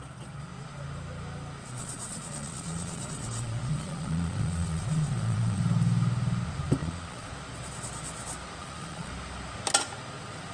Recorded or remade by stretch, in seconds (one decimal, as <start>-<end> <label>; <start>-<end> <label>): 0.0-1.6 recorded; 1.6-5.6 remade; 5.6-6.8 recorded; 6.8-7.3 remade; 7.3-8.6 recorded; 8.6-9.1 remade; 9.1-10.5 recorded